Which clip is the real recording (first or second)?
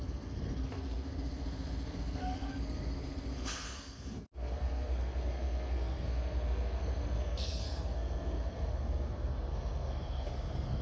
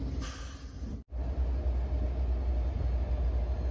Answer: second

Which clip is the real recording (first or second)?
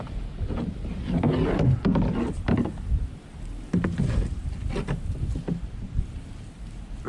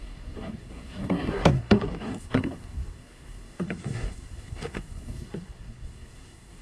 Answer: first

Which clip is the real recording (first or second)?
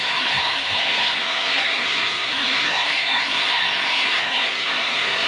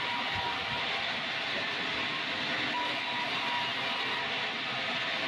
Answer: second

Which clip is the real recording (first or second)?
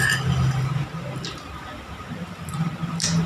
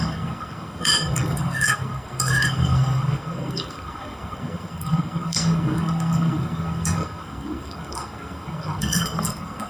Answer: first